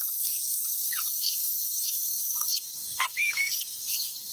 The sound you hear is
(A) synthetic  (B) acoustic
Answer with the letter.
A